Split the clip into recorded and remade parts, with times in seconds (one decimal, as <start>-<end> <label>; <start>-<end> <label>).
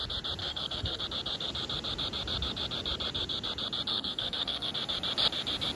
0.0-0.4 recorded; 0.4-1.0 remade; 1.0-3.9 recorded; 3.9-4.7 remade; 4.7-5.8 recorded